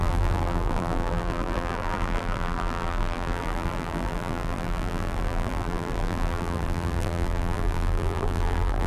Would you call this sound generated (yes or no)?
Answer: yes